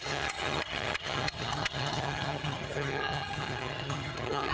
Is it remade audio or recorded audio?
remade